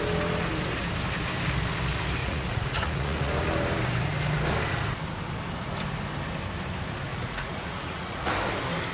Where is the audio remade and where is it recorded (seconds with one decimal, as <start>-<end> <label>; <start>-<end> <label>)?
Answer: 0.0-2.2 recorded; 2.2-3.3 remade; 3.3-7.1 recorded; 7.1-8.3 remade; 8.3-8.9 recorded